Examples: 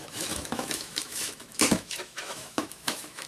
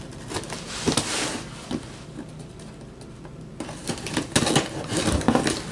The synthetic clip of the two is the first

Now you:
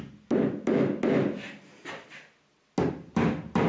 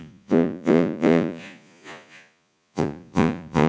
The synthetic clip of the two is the second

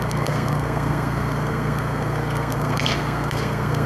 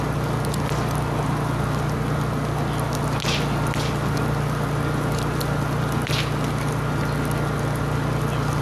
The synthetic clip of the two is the first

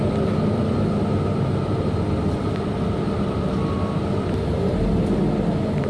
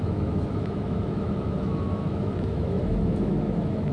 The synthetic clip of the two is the second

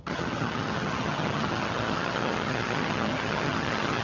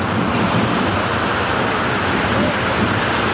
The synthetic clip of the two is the first